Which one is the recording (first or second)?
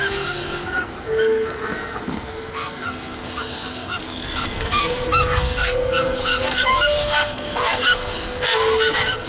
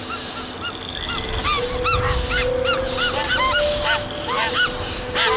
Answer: second